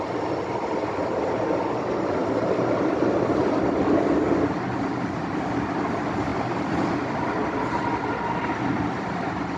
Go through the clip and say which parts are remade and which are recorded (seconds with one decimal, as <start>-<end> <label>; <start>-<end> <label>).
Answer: 0.0-2.2 recorded; 2.2-2.8 remade; 2.8-6.3 recorded; 6.3-6.9 remade; 6.9-9.6 recorded